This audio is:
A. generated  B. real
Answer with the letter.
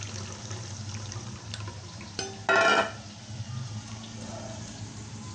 B